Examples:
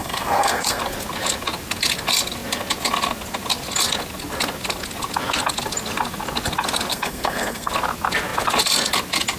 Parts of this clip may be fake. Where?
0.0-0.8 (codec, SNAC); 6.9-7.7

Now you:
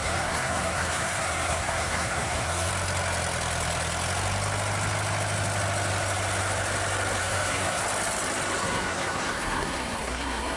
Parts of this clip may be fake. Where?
0.0-2.7 (codec, SNAC); 7.2-7.8; 8.6-10.6

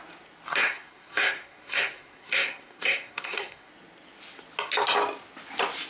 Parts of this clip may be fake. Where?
0.6-3.7 (codec, SNAC)

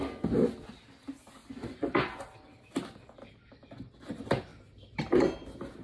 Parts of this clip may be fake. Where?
none

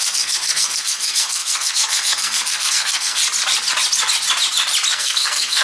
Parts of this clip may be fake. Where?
0.0-3.2 (codec, SNAC); 4.9-5.6

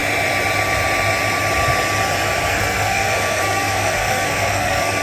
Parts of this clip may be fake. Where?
2.5-5.0 (codec, SNAC)

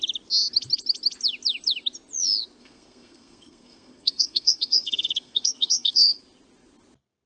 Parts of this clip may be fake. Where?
2.6-6.2 (codec, SNAC)